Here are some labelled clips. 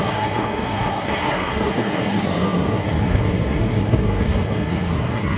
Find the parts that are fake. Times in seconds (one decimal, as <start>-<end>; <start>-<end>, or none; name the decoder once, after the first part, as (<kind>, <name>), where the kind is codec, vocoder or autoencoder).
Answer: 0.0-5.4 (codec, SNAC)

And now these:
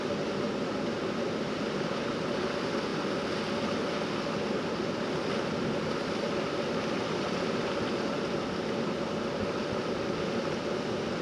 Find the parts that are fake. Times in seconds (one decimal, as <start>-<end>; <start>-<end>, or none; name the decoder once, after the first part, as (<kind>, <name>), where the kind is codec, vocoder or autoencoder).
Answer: none

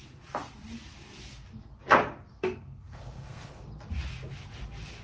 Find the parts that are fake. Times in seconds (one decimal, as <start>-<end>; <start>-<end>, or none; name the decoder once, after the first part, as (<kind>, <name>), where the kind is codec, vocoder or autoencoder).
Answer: 2.3-3.6 (codec, SNAC)

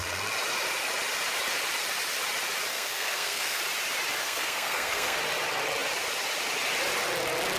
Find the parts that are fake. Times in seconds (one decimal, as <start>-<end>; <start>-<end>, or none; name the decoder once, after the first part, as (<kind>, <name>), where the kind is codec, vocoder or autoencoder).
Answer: 2.7-3.6 (codec, SNAC); 4.2-5.2

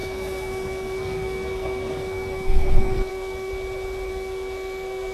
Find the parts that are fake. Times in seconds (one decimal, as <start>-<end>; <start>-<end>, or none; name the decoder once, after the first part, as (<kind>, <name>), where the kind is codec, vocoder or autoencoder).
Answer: 0.0-3.5 (codec, SNAC); 4.1-5.1